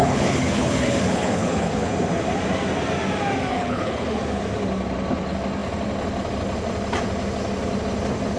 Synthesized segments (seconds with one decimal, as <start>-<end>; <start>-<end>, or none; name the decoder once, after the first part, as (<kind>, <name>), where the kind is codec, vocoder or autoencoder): 0.0-1.9 (codec, HILCodec); 3.5-4.2